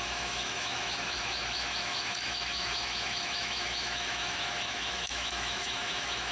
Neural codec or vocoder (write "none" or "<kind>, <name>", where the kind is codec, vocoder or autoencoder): autoencoder, DAC-VAE